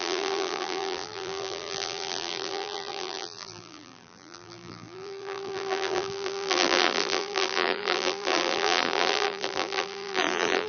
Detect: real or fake fake